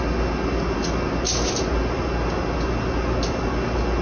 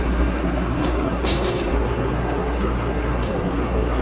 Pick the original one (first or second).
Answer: first